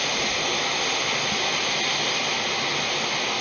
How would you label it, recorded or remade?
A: recorded